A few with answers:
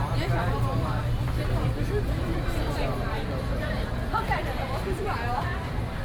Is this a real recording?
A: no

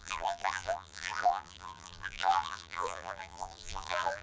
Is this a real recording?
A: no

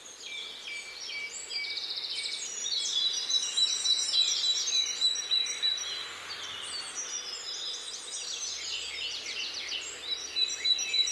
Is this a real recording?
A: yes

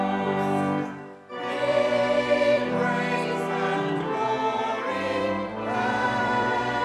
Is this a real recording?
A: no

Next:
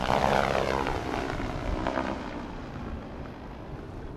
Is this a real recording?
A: yes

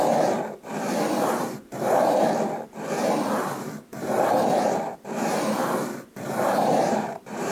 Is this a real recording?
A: no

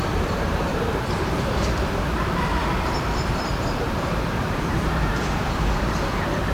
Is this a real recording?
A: no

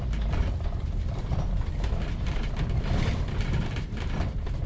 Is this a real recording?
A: no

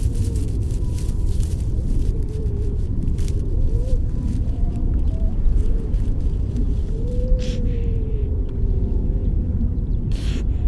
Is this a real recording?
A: no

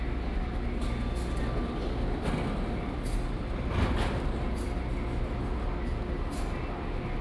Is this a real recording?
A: yes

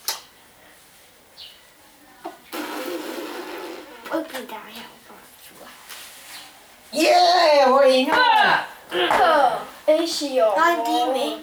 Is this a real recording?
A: yes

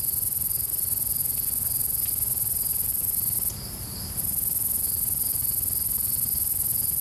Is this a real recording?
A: yes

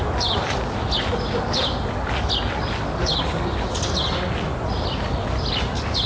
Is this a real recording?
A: yes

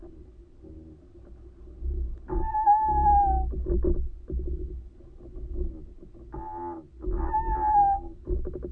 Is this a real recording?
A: yes